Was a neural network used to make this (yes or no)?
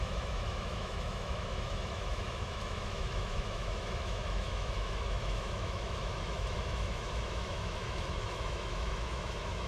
yes